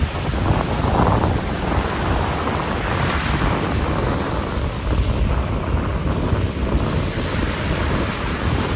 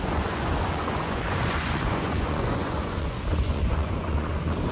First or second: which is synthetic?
second